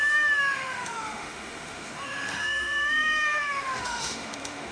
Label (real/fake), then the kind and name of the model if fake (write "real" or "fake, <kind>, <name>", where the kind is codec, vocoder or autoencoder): fake, autoencoder, DAC-VAE